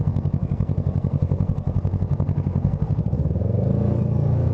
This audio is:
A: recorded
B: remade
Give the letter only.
B